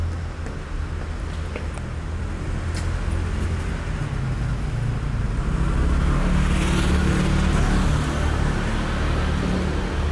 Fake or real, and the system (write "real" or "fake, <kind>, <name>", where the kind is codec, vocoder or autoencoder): real